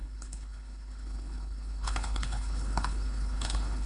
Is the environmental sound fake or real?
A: fake